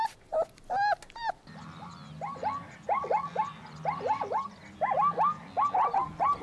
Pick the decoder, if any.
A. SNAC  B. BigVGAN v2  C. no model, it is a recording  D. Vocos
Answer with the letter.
C